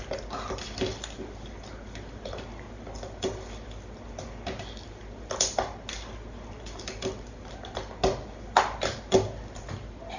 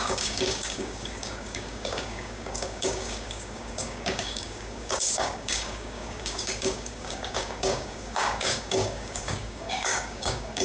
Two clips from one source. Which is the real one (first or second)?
first